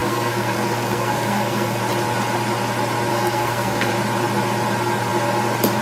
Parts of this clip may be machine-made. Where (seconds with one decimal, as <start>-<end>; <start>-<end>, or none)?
0.0-1.8; 3.1-3.9